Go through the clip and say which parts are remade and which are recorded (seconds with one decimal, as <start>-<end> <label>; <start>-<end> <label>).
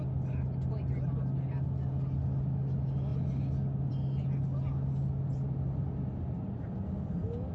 0.0-7.5 recorded